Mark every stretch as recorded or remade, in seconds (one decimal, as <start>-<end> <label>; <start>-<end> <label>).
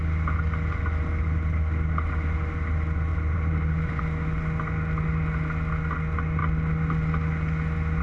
0.0-3.1 recorded; 3.1-4.0 remade; 4.0-8.0 recorded